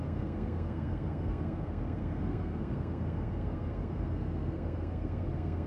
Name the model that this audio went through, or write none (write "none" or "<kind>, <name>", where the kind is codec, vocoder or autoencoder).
codec, SNAC